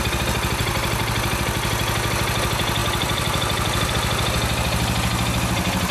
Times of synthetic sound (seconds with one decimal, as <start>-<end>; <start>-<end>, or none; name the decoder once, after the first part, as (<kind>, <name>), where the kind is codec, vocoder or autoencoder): 2.8-3.9 (vocoder, BigVGAN v2)